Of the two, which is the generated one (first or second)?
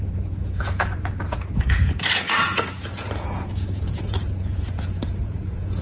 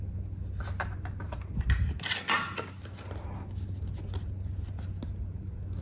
first